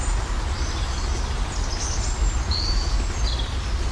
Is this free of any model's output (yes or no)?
yes